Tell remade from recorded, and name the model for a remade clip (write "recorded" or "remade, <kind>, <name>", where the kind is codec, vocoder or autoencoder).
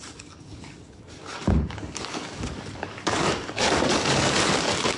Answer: remade, codec, DAC